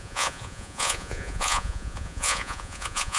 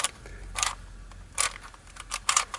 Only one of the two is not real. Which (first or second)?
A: first